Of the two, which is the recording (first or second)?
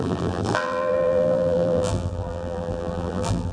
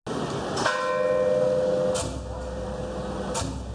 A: second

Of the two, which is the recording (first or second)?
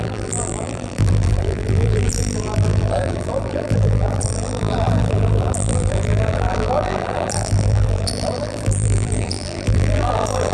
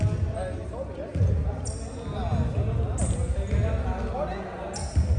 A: second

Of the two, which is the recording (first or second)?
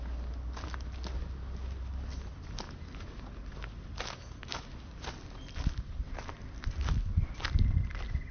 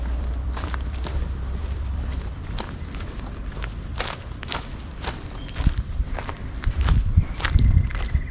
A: first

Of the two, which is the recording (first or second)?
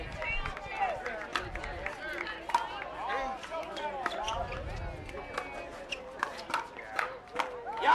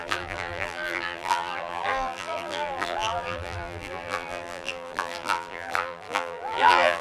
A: first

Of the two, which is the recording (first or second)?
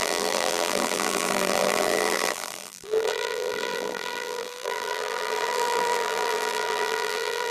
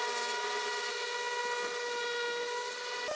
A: second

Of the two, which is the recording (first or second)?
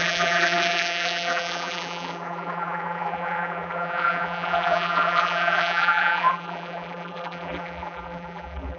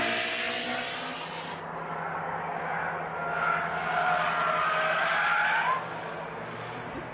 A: second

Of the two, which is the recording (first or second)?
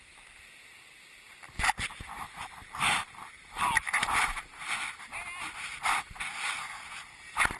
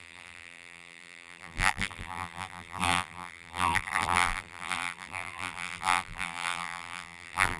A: first